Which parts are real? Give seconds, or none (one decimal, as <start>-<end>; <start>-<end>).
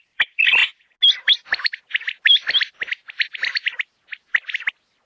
0.0-5.1